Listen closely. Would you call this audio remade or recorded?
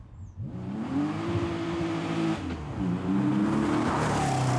recorded